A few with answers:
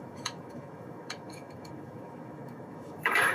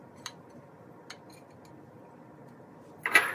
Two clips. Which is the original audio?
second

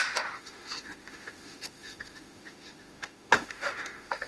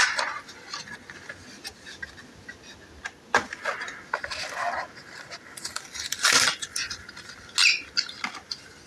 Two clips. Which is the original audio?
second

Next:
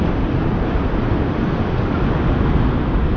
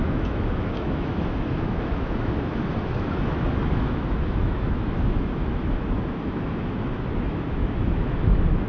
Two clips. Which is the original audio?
first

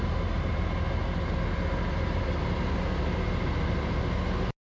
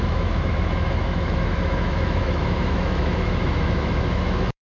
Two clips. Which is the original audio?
first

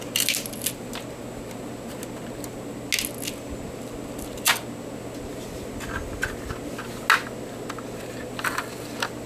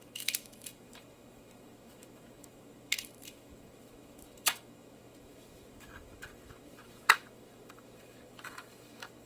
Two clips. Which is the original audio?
first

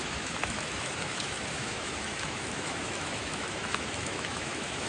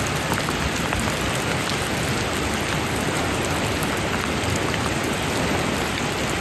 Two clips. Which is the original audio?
second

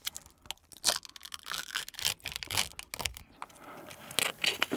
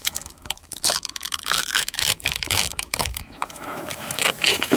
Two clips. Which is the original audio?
first